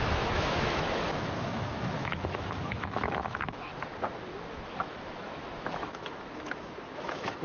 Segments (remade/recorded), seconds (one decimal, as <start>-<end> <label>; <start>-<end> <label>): 0.0-3.7 remade; 3.7-4.5 recorded; 4.5-7.4 remade